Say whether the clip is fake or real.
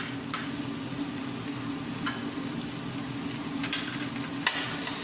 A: real